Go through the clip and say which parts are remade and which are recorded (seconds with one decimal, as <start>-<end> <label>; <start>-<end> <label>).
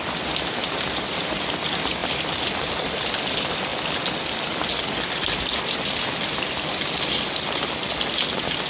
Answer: 0.0-3.7 remade; 3.7-8.7 recorded